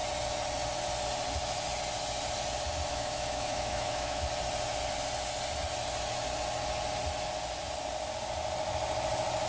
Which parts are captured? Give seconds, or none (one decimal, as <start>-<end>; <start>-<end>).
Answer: 0.0-2.9; 4.3-9.5